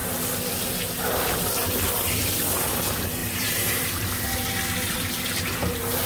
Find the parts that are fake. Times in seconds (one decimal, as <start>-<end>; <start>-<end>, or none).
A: 3.2-4.1

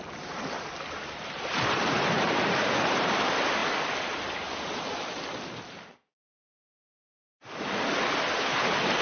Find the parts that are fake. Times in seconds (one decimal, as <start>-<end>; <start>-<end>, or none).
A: 0.0-3.6; 8.6-9.0

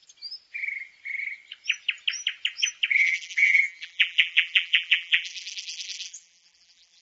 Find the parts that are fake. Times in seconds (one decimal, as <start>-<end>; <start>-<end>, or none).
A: 3.0-7.0

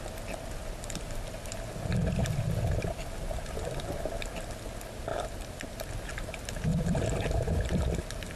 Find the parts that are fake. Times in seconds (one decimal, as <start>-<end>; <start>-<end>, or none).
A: 5.1-5.9; 6.7-7.8

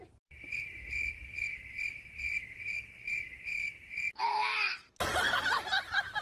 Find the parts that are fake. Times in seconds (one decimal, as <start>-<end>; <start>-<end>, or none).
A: 0.0-3.5; 4.2-6.2

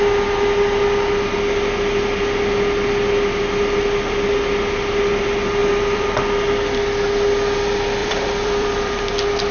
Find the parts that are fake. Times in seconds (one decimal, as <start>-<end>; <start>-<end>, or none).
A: 5.6-6.2; 8.0-9.1

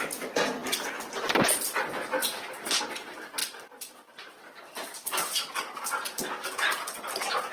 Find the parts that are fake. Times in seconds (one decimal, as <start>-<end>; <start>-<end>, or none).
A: 2.2-2.8; 3.4-5.8